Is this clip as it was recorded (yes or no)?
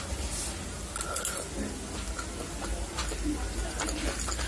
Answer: yes